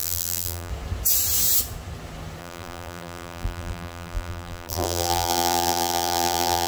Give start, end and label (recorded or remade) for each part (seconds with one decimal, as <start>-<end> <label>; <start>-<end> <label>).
0.0-0.7 remade; 0.7-2.4 recorded; 2.4-6.7 remade